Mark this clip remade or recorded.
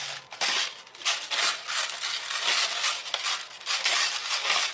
recorded